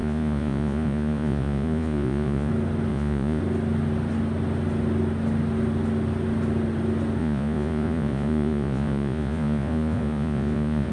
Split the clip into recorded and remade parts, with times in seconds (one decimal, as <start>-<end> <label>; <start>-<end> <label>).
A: 0.0-2.5 remade; 2.5-2.9 recorded; 2.9-3.4 remade; 3.4-7.2 recorded; 7.2-10.9 remade